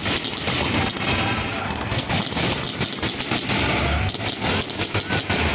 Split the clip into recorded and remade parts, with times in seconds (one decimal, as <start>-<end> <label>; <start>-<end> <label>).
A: 0.0-1.6 recorded; 1.6-2.1 remade; 2.1-5.5 recorded